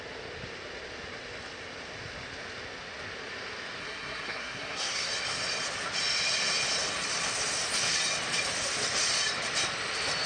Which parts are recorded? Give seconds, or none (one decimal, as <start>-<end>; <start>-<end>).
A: 0.0-3.8; 5.1-10.3